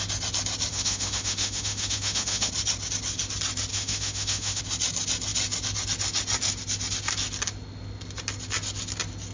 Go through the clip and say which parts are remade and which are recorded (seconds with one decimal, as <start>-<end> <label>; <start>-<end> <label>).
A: 0.0-0.7 recorded; 0.7-2.5 remade; 2.5-3.7 recorded; 3.7-4.6 remade; 4.6-9.3 recorded